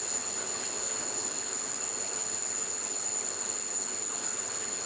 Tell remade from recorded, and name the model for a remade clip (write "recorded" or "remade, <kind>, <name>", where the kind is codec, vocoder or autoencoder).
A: remade, codec, HILCodec